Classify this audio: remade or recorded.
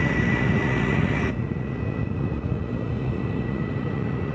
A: remade